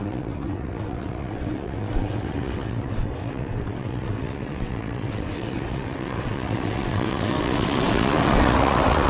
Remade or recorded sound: remade